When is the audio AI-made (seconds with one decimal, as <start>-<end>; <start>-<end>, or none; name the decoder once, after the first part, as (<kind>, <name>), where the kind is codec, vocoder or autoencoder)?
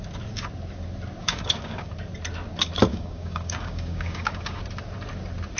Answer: 1.2-1.9 (codec, DAC); 2.9-4.6